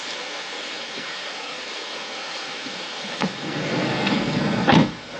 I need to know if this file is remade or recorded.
remade